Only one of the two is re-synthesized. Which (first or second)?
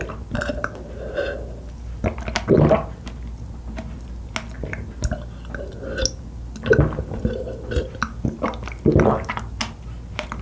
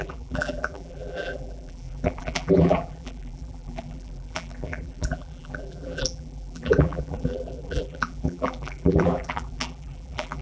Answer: second